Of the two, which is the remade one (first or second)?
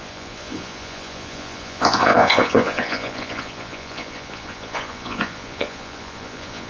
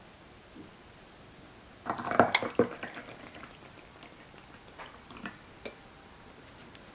first